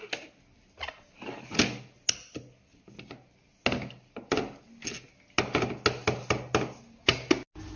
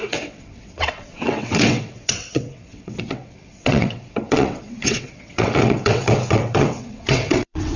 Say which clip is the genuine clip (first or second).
first